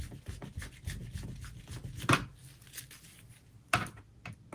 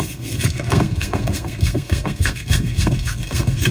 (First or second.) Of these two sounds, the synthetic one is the second